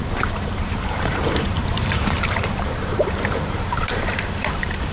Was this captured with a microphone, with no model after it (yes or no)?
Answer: no